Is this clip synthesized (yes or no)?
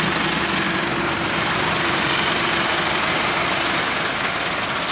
no